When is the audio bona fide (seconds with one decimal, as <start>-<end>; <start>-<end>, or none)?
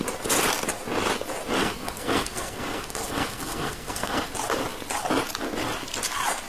0.0-1.6; 4.3-6.5